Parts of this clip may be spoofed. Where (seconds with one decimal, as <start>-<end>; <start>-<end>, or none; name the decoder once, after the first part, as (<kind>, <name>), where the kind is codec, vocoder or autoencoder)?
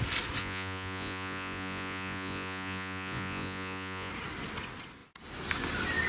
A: 0.4-4.1 (vocoder, Vocos)